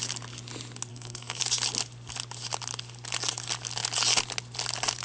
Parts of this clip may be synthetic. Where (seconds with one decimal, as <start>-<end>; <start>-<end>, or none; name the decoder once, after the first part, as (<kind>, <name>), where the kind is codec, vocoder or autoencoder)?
0.9-1.4 (codec, SNAC)